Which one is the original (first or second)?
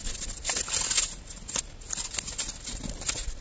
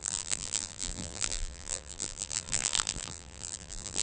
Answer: first